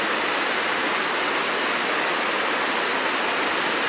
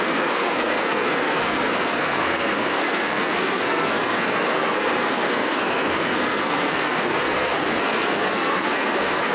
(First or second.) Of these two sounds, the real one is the first